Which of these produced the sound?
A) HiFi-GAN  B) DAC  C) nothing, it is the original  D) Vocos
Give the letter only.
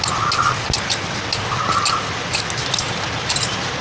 C